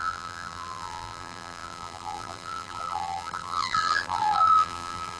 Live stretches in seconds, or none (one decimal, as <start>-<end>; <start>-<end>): none